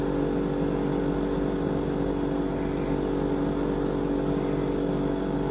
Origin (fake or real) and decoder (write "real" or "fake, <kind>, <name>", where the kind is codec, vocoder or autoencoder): real